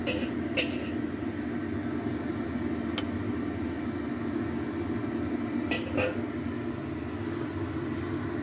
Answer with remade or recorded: recorded